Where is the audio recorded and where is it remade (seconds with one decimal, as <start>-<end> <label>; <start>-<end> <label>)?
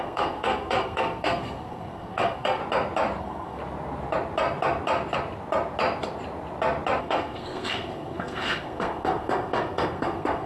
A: 0.0-2.6 remade; 2.6-3.2 recorded; 3.2-3.6 remade; 3.6-7.0 recorded; 7.0-10.5 remade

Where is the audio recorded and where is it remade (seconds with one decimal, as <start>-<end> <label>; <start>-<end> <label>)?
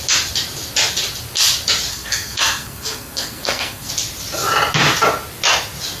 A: 0.0-1.9 recorded; 1.9-3.9 remade; 3.9-6.0 recorded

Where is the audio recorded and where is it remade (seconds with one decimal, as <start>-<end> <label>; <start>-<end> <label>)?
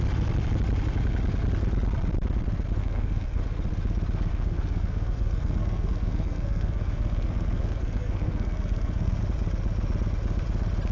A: 0.0-2.8 recorded; 2.8-3.4 remade; 3.4-4.3 recorded; 4.3-9.2 remade; 9.2-10.9 recorded